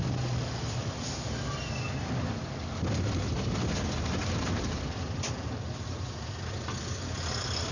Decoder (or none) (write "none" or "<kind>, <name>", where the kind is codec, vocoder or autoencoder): none